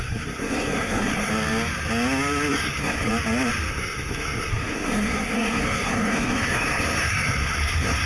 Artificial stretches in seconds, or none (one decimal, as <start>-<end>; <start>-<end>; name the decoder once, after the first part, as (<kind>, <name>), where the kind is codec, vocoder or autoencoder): 0.0-1.3 (codec, SNAC); 2.5-3.1; 3.7-8.1